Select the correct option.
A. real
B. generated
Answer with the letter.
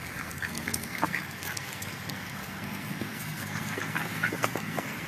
B